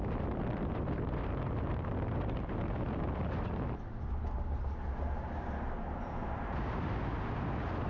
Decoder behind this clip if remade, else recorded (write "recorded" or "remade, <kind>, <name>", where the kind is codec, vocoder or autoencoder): recorded